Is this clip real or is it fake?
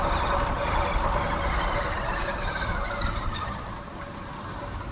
real